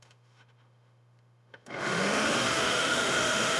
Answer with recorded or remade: remade